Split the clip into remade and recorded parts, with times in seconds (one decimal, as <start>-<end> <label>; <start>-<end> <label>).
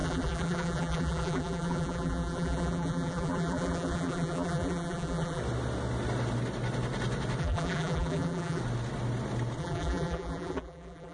0.0-5.4 remade; 5.4-7.4 recorded; 7.4-8.6 remade; 8.6-9.6 recorded; 9.6-11.1 remade